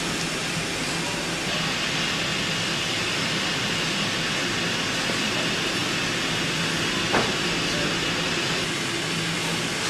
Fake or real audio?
real